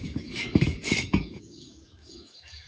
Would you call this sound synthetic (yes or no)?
yes